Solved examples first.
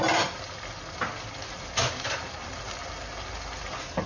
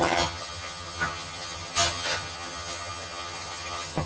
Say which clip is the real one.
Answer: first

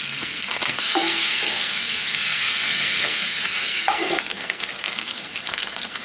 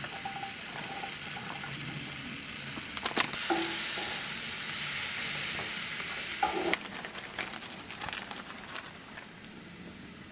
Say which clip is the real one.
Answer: second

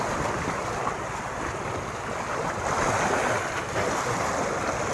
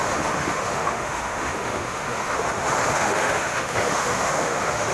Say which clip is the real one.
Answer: first